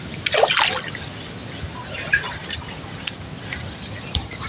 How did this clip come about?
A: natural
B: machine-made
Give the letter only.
A